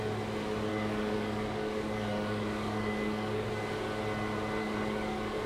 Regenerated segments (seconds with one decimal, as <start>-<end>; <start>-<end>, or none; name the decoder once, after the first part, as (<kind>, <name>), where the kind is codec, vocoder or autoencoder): 0.7-3.5 (codec, DAC); 4.6-5.5